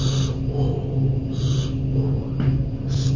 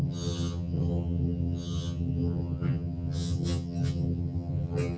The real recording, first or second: first